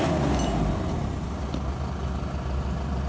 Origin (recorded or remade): recorded